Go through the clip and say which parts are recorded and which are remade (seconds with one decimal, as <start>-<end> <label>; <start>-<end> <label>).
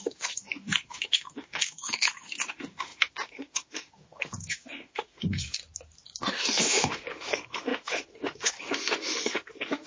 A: 0.0-5.6 remade; 5.6-6.2 recorded; 6.2-9.9 remade